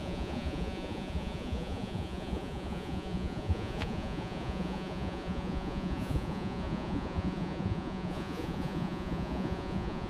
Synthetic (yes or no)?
yes